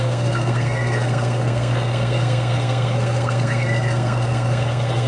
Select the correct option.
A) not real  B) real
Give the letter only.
A